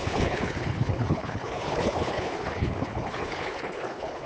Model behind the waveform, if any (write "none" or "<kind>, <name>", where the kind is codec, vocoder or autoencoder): codec, HILCodec